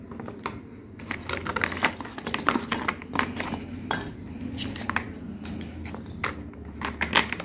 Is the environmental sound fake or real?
real